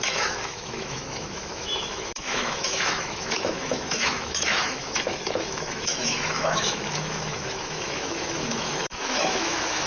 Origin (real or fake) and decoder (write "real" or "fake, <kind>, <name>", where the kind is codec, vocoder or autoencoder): fake, autoencoder, DAC-VAE